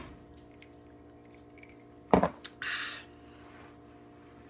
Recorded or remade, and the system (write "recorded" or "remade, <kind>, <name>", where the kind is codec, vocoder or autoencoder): recorded